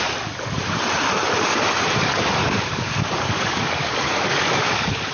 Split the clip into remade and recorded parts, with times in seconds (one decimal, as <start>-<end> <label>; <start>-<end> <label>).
0.0-2.4 recorded; 2.4-5.1 remade